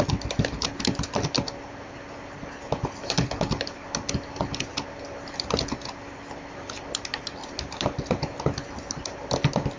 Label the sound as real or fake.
real